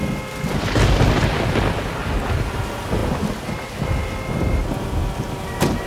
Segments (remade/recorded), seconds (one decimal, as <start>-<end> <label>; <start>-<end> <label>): 0.0-5.0 recorded; 5.0-5.9 remade